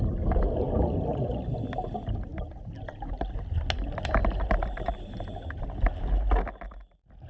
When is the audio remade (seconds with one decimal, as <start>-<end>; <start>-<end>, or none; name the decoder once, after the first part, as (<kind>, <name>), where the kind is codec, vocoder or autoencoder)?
none